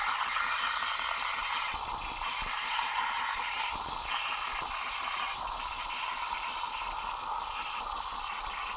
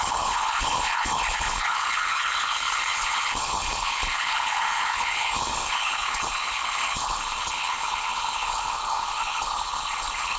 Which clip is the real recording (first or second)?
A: first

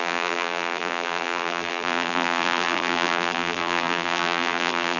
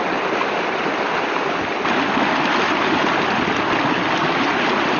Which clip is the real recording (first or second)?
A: second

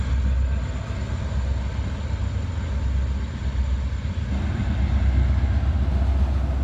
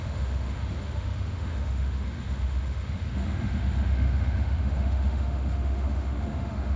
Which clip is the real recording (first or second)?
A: first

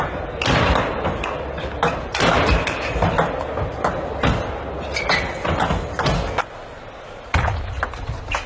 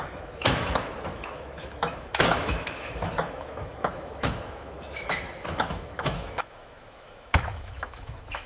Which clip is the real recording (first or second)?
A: first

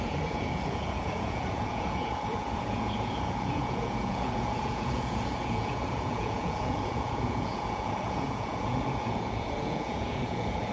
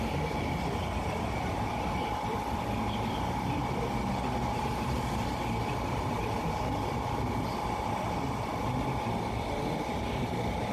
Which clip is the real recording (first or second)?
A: second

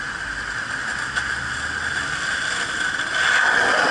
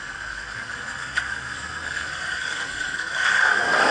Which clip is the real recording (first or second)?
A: first